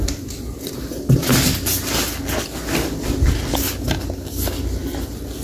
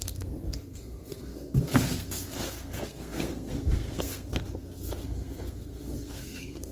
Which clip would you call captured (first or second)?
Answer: first